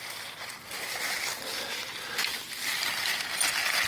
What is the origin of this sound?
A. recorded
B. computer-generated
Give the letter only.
A